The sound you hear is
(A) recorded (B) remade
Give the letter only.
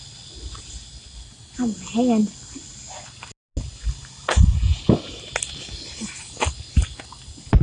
A